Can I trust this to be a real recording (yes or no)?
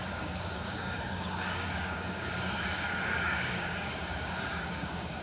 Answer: no